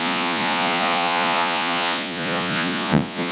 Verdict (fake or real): fake